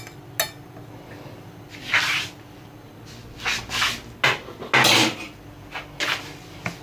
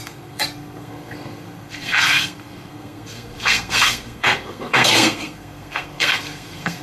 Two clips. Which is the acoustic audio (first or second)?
first